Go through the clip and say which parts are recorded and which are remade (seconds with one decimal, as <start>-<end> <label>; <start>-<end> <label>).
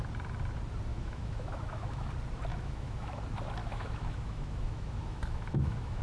0.0-0.9 recorded; 0.9-2.1 remade; 2.1-2.5 recorded; 2.5-3.2 remade; 3.2-3.6 recorded; 3.6-6.0 remade